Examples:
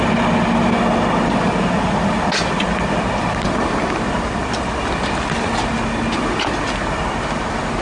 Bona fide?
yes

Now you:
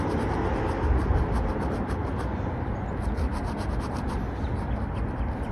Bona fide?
yes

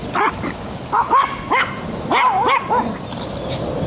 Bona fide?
yes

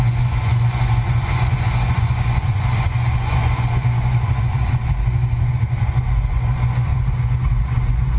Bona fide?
no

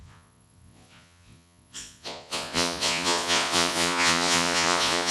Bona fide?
no